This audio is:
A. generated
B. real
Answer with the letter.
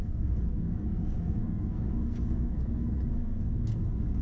A